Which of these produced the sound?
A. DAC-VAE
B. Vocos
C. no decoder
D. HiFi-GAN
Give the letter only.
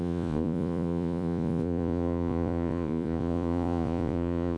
B